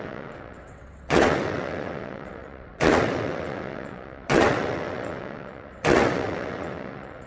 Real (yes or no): no